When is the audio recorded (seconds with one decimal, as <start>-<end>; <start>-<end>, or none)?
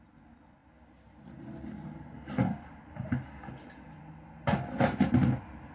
0.0-5.7